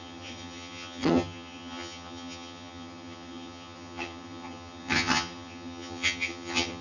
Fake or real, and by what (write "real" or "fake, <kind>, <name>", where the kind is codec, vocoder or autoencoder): fake, vocoder, HiFi-GAN